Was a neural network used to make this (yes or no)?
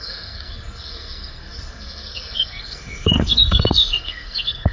yes